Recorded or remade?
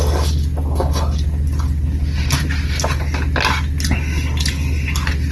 recorded